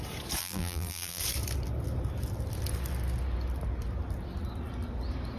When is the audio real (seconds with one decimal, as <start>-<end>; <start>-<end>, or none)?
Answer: 0.0-0.4; 1.2-5.4